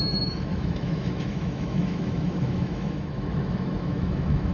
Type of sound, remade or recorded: remade